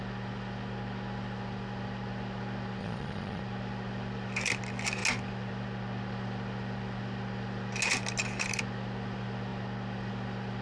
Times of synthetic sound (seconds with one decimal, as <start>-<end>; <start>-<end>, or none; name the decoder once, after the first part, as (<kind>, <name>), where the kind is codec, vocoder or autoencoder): 2.8-3.4 (vocoder, Vocos)